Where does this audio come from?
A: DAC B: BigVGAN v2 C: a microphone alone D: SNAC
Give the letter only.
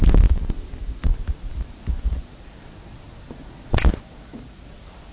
C